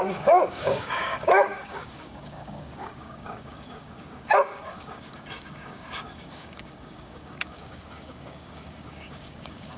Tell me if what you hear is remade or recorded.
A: remade